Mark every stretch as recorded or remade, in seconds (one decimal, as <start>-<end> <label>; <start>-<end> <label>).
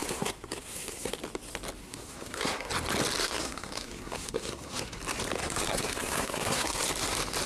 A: 0.0-1.1 remade; 1.1-1.8 recorded; 1.8-2.7 remade; 2.7-3.2 recorded; 3.2-5.0 remade; 5.0-5.4 recorded; 5.4-6.8 remade; 6.8-7.5 recorded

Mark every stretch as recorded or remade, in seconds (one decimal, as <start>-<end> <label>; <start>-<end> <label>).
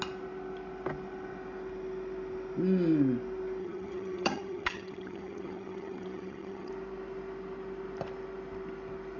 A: 0.0-3.6 recorded; 3.6-6.7 remade; 6.7-9.2 recorded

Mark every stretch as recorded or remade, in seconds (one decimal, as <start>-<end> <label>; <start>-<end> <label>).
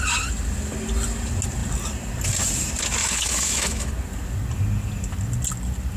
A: 0.0-3.0 recorded; 3.0-3.9 remade; 3.9-6.0 recorded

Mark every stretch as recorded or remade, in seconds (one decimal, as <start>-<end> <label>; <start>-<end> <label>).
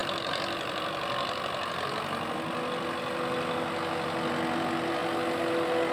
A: 0.0-1.7 remade; 1.7-5.9 recorded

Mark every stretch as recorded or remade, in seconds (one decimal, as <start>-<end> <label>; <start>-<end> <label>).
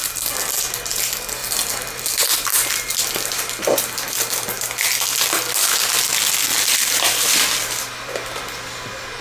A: 0.0-1.4 recorded; 1.4-2.1 remade; 2.1-2.5 recorded; 2.5-4.5 remade; 4.5-6.5 recorded; 6.5-8.4 remade; 8.4-9.2 recorded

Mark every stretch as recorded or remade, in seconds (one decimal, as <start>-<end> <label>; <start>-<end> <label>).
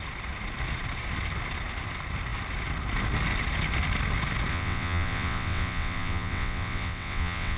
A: 0.0-4.5 recorded; 4.5-7.6 remade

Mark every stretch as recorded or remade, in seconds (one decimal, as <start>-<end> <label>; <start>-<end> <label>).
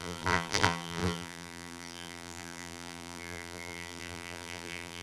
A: 0.0-5.0 remade